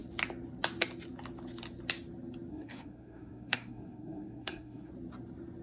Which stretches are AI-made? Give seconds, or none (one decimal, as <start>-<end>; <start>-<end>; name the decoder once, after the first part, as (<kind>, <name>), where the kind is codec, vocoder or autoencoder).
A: 2.5-4.9 (codec, SNAC)